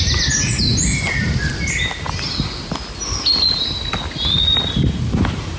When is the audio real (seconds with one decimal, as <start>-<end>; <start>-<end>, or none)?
0.0-5.6

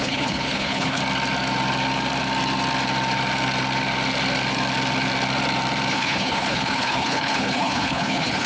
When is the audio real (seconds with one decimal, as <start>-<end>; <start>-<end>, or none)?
1.0-5.9